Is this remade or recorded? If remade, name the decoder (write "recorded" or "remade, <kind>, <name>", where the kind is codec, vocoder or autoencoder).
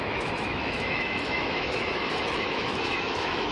remade, autoencoder, DAC-VAE